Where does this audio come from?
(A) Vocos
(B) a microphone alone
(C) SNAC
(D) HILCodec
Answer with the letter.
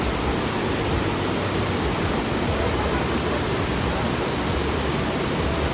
B